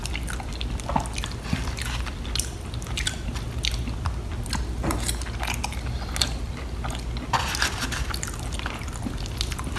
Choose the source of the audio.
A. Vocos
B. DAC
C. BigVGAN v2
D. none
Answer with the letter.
D